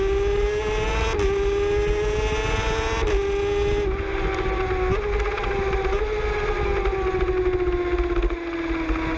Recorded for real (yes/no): yes